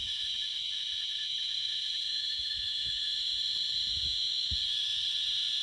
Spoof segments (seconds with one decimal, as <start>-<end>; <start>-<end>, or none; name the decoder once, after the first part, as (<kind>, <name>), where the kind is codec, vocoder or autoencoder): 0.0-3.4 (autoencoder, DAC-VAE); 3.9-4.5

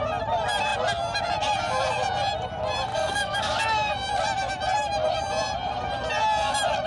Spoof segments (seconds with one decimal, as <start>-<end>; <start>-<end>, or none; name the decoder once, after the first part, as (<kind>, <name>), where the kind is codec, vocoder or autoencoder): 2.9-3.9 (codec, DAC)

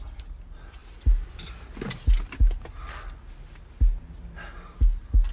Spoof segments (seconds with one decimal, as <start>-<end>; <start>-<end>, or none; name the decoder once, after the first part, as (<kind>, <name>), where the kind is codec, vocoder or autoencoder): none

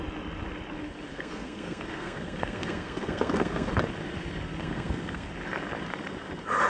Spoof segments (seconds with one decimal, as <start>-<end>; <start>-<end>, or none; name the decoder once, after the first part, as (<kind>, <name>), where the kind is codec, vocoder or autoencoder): 1.1-3.7 (codec, SNAC); 4.6-5.3

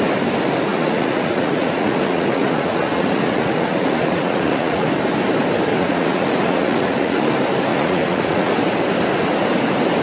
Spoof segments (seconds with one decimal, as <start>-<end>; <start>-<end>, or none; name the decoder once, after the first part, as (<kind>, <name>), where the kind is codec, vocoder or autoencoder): 0.7-4.9 (vocoder, Vocos); 5.7-7.3; 7.7-8.5

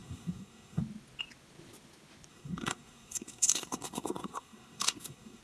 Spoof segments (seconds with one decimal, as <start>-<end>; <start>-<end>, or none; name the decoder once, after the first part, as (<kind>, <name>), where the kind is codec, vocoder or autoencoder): 0.0-0.8 (codec, SNAC); 2.3-5.4

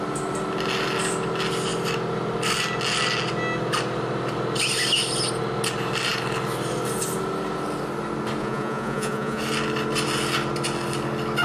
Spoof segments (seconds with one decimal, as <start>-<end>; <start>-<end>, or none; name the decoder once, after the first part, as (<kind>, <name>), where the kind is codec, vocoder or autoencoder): 8.4-9.4 (vocoder, Vocos)

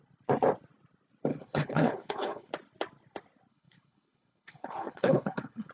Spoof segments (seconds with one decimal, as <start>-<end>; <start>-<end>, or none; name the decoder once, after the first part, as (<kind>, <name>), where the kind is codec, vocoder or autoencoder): 1.3-2.5 (codec, HILCodec); 3.5-5.7